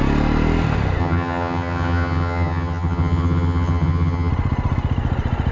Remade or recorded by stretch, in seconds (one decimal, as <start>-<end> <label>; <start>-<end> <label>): 0.0-1.0 recorded; 1.0-4.3 remade; 4.3-5.5 recorded